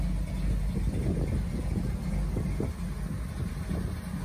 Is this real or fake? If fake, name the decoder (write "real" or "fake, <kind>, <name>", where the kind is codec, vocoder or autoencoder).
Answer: real